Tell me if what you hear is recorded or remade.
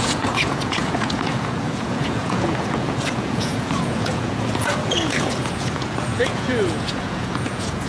remade